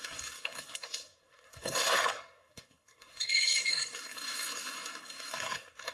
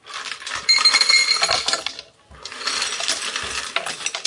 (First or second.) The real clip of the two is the second